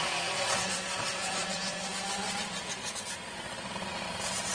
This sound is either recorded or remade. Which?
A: remade